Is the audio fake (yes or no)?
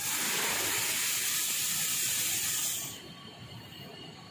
no